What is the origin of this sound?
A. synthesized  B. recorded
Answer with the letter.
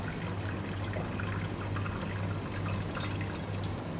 B